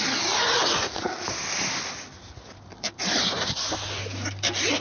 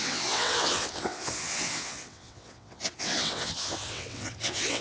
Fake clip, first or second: second